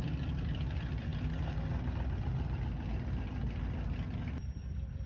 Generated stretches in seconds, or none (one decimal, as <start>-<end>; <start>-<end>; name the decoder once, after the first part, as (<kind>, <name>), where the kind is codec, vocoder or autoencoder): none